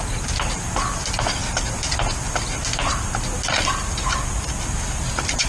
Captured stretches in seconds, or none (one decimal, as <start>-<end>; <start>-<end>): 0.0-5.5